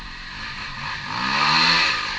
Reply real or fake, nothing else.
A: real